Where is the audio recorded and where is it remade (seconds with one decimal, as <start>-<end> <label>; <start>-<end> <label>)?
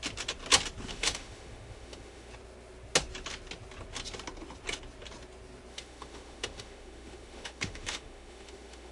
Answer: 0.0-0.9 recorded; 0.9-2.3 remade; 2.3-5.7 recorded; 5.7-8.9 remade